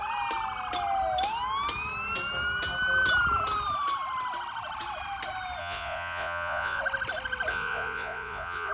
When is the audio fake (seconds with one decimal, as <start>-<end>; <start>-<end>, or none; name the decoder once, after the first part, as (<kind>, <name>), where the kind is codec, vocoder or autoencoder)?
5.6-6.8 (vocoder, Vocos); 7.5-8.7

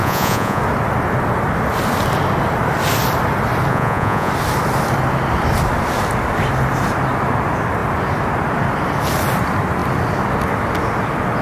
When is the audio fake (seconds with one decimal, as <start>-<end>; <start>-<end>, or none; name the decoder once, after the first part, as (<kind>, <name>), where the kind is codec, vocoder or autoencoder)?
0.0-0.6 (vocoder, Vocos); 3.7-4.3